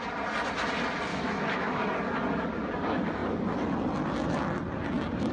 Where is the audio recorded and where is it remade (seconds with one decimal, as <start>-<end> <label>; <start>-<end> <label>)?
0.0-1.1 recorded; 1.1-1.8 remade; 1.8-5.3 recorded

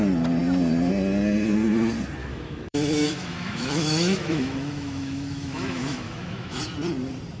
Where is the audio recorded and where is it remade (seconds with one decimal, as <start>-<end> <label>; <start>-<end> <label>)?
0.0-2.2 recorded; 2.2-6.6 remade; 6.6-7.4 recorded

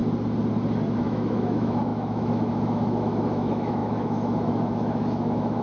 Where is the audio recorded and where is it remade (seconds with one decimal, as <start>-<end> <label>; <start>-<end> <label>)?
0.0-1.0 recorded; 1.0-5.6 remade

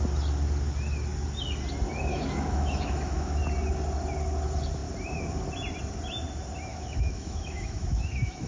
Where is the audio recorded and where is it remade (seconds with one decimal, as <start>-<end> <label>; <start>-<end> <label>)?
0.0-2.1 recorded; 2.1-3.4 remade; 3.4-6.7 recorded; 6.7-8.5 remade